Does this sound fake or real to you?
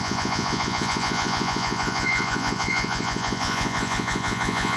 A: fake